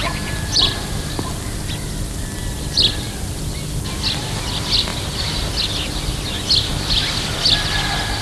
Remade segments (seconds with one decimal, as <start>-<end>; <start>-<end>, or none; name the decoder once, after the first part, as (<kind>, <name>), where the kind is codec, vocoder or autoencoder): none